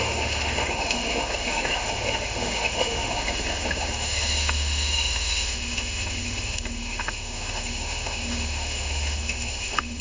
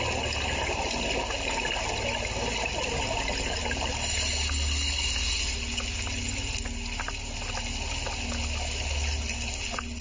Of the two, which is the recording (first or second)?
second